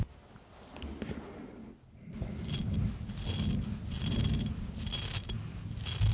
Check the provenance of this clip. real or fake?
real